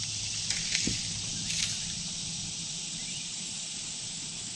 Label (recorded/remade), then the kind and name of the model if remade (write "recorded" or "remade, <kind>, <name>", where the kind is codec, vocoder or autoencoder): recorded